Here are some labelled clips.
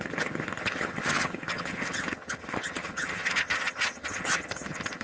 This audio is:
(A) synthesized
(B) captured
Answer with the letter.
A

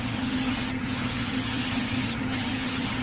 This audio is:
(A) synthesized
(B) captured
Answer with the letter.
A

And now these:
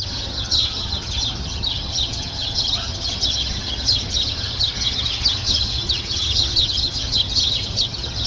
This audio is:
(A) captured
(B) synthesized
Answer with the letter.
B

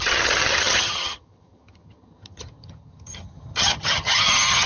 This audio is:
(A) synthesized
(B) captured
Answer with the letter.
A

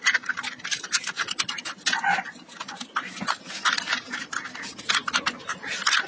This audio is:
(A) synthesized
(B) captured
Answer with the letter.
B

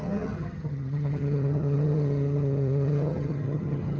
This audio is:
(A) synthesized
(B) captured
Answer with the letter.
A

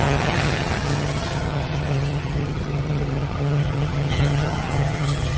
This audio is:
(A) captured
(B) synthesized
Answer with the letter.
B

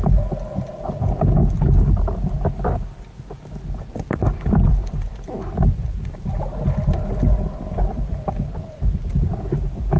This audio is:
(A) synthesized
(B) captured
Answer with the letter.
B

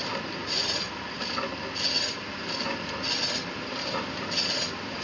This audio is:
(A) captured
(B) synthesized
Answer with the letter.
A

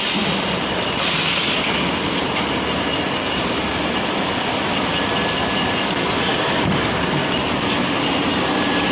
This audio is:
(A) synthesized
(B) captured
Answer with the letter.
B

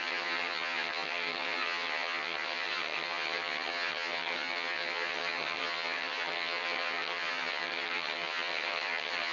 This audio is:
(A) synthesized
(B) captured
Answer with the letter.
A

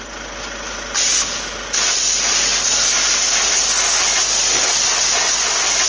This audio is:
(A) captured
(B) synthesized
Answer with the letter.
A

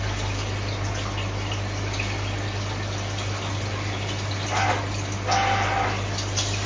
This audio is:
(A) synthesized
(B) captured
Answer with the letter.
B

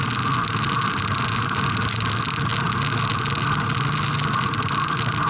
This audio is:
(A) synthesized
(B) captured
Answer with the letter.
B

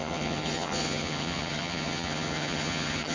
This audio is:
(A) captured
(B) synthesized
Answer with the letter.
B